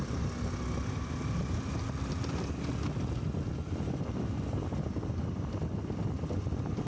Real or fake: real